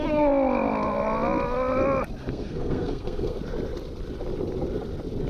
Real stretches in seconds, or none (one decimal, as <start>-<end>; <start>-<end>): 0.0-2.2; 3.4-5.3